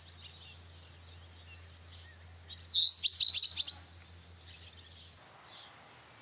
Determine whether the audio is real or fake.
real